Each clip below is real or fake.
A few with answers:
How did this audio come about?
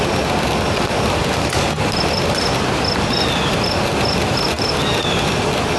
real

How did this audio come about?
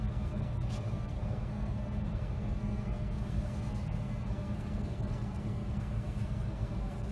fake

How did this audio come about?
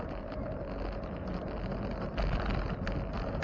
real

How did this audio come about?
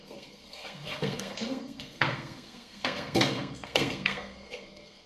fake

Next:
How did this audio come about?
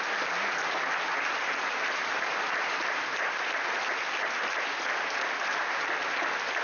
real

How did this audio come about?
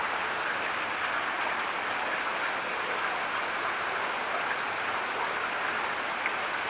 real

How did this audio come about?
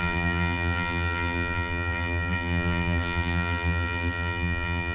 fake